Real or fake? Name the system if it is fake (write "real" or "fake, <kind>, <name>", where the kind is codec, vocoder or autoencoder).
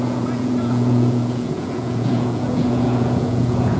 fake, vocoder, Vocos